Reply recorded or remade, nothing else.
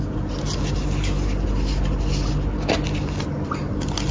recorded